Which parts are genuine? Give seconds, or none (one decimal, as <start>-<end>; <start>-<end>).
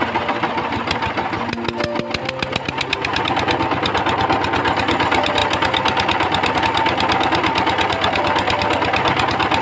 0.0-9.6